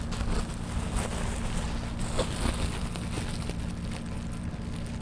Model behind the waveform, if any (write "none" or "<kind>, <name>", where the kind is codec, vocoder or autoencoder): none